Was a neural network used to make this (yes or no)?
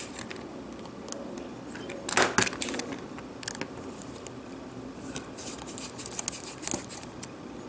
no